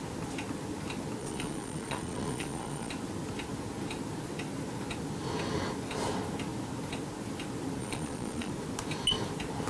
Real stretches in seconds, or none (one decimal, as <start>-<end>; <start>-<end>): 0.0-1.2; 2.9-7.8; 8.5-9.7